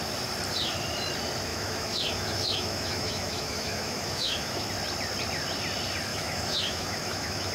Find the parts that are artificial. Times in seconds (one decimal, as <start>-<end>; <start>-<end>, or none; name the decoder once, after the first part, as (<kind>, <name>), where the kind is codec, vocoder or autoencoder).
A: 1.5-4.7 (autoencoder, DAC-VAE); 6.1-7.5